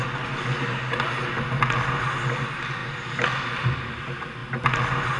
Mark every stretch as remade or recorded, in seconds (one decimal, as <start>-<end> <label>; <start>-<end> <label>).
0.0-5.2 recorded